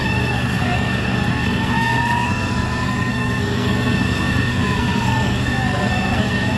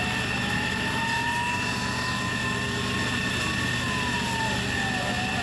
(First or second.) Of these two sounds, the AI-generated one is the first